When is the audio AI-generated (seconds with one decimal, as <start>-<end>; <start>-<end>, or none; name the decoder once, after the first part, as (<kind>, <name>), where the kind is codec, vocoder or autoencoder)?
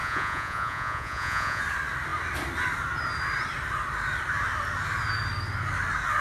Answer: 0.0-1.6 (vocoder, Vocos)